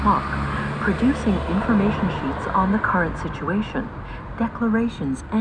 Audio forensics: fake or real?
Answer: real